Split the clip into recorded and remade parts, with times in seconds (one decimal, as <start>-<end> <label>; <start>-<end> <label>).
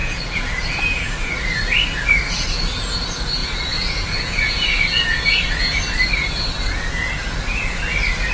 0.0-1.3 remade; 1.3-3.4 recorded; 3.4-5.4 remade; 5.4-8.3 recorded